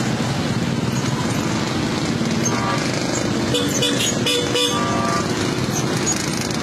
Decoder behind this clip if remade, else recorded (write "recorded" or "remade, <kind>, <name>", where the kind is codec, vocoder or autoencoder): recorded